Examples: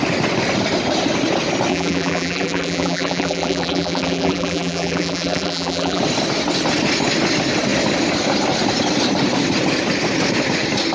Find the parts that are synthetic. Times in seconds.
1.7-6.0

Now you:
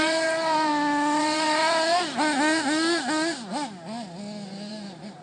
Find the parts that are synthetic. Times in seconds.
0.0-0.7; 1.2-1.6; 4.7-5.2

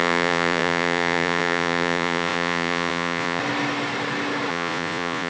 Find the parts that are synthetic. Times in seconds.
0.0-3.4; 4.5-5.3

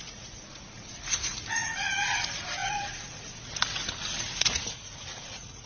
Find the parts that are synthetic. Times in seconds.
0.0-5.7

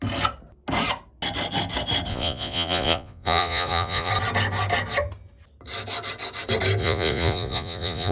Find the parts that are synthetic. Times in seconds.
2.1-4.1; 6.8-8.1